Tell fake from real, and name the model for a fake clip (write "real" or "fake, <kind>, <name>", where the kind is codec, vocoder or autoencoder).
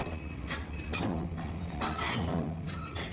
fake, vocoder, WaveNeXt